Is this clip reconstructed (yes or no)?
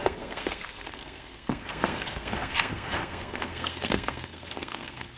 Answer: yes